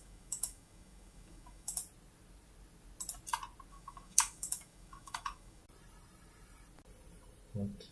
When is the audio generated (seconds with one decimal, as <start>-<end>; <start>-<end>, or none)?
0.0-1.8; 3.7-5.6